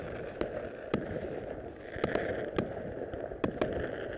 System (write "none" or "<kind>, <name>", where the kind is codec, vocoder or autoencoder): none